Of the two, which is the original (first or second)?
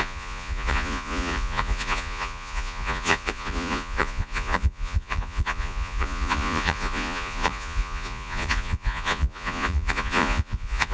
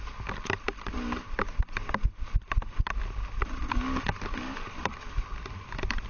second